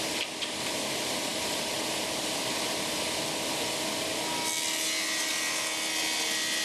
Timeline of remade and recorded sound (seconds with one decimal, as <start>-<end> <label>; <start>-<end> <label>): 0.0-6.6 recorded